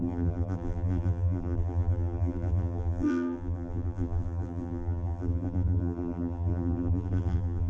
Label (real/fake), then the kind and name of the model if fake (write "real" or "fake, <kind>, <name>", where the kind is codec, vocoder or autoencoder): fake, vocoder, BigVGAN v2